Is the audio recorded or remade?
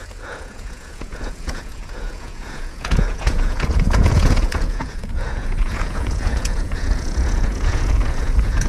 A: remade